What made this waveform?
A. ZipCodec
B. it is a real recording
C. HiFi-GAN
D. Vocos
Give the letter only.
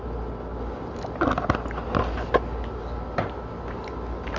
B